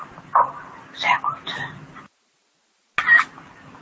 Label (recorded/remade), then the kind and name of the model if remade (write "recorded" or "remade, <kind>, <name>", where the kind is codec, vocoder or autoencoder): recorded